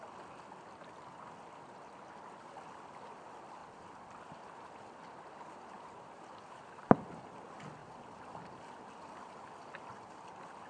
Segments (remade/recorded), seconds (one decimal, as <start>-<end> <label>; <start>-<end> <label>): 0.0-3.6 recorded; 3.6-4.2 remade; 4.2-7.8 recorded; 7.8-8.6 remade; 8.6-10.7 recorded